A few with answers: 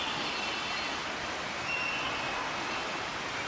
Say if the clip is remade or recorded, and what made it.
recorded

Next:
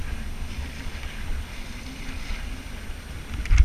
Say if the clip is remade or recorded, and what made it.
recorded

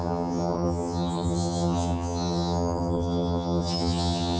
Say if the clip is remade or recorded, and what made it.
remade, vocoder, HiFi-GAN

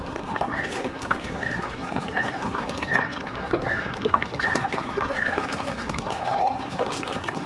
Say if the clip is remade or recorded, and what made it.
remade, codec, SNAC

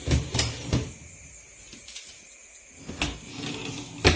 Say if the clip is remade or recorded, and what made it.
recorded